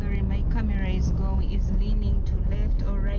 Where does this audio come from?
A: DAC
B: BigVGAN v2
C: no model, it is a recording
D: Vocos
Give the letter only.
C